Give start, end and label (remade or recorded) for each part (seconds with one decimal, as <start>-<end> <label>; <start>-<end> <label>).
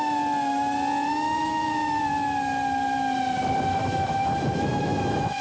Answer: 0.0-1.1 recorded; 1.1-2.0 remade; 2.0-3.7 recorded; 3.7-5.4 remade